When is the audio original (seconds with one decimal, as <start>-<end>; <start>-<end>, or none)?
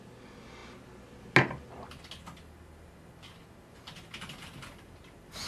0.0-5.5